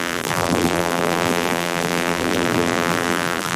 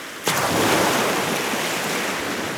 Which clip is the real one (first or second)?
second